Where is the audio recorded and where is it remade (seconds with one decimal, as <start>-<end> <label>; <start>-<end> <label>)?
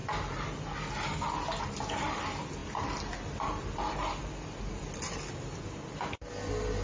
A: 0.0-6.8 recorded